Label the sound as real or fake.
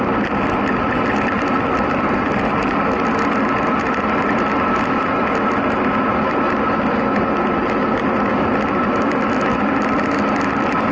real